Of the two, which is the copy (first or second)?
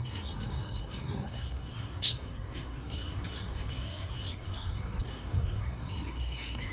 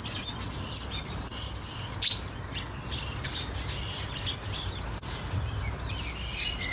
first